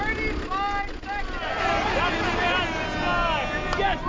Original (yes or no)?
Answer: yes